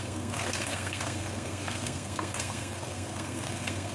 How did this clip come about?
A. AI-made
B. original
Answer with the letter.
A